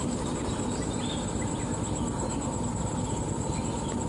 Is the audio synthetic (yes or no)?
no